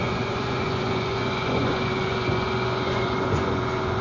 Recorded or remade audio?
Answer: remade